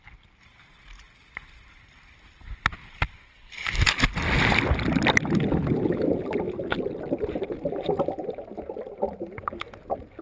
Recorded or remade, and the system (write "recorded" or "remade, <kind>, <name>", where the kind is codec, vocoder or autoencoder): recorded